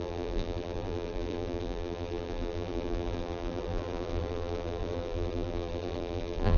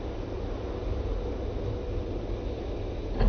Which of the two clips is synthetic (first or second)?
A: first